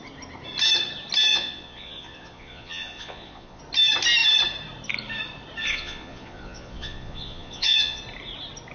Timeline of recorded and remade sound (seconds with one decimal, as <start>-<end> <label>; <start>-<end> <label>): 0.0-1.3 recorded; 1.3-3.6 remade; 3.6-5.6 recorded; 5.6-8.0 remade; 8.0-8.7 recorded